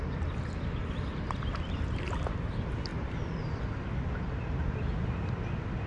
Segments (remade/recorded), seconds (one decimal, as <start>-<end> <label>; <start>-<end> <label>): 0.0-5.9 recorded